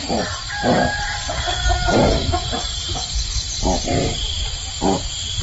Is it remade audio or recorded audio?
recorded